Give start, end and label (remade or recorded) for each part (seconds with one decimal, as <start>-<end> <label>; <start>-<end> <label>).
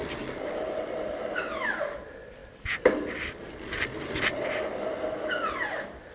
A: 0.0-6.1 recorded